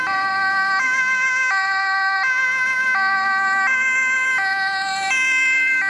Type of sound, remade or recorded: remade